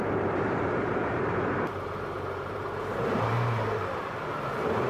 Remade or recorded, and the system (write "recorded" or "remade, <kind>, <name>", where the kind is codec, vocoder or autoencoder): remade, vocoder, BigVGAN v2